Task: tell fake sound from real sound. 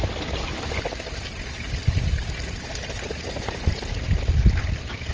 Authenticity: real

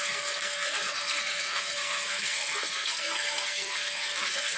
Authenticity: fake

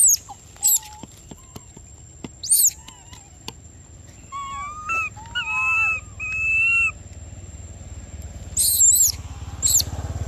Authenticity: real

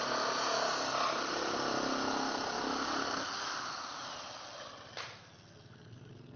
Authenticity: real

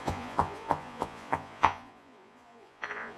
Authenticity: fake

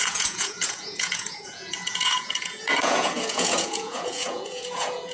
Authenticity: fake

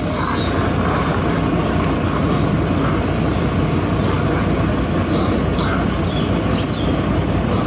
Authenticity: real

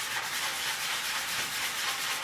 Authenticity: real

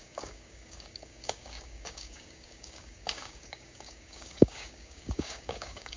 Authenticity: fake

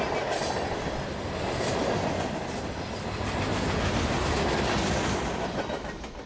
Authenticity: real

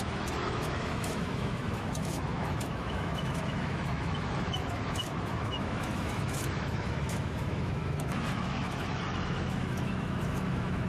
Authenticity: fake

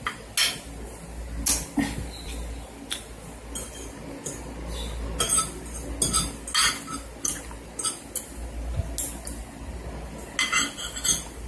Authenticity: real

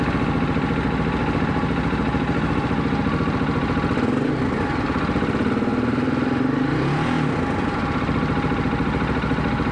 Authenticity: real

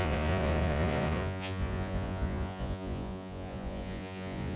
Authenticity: fake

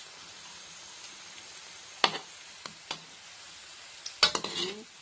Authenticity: real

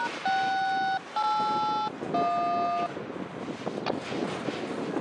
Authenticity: real